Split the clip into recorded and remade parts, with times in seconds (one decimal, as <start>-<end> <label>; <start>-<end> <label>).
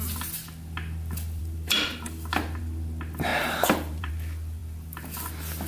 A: 0.0-3.3 recorded; 3.3-4.1 remade; 4.1-5.7 recorded